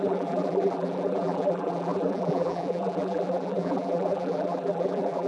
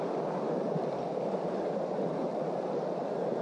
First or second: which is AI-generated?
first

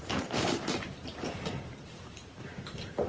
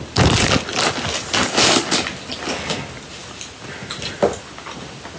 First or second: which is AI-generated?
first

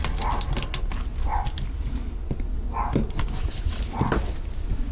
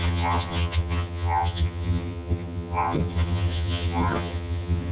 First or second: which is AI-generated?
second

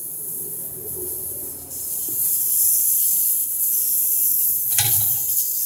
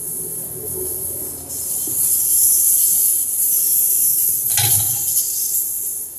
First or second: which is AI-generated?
first